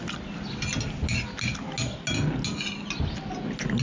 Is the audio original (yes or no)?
yes